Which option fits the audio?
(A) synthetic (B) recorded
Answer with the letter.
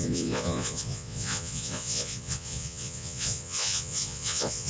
A